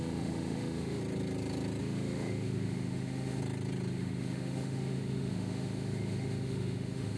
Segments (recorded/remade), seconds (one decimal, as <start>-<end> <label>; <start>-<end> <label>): 0.0-1.0 remade; 1.0-1.8 recorded; 1.8-3.4 remade; 3.4-3.9 recorded; 3.9-7.2 remade